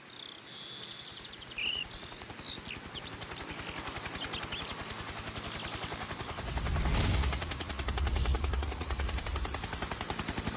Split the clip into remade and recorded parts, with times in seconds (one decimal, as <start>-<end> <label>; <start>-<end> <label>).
0.0-1.1 recorded; 1.1-2.3 remade; 2.3-7.1 recorded; 7.1-9.2 remade; 9.2-10.6 recorded